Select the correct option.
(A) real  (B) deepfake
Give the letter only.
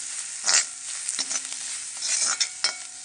A